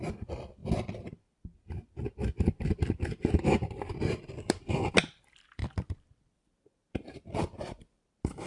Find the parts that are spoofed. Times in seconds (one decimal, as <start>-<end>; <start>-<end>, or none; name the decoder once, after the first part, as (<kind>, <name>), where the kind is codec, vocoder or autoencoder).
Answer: 0.0-8.5 (vocoder, BigVGAN v2)